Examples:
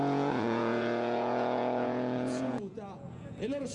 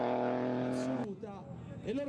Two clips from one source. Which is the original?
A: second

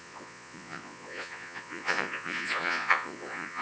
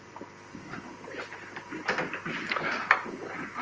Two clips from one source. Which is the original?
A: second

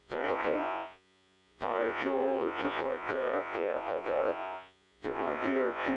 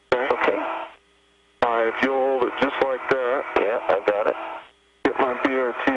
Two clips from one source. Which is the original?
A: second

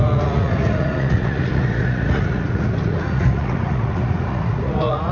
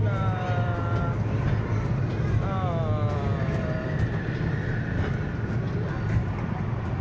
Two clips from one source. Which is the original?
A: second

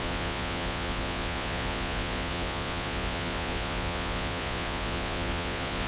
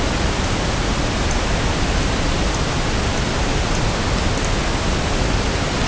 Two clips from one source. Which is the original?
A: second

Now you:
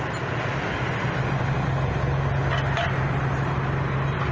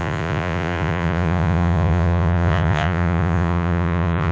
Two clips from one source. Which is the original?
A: first